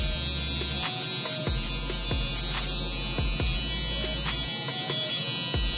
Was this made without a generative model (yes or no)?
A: yes